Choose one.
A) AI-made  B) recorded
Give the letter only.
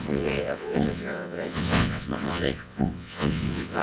A